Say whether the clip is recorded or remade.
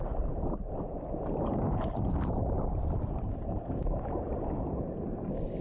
recorded